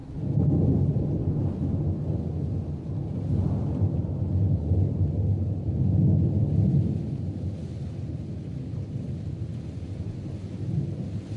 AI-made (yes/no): no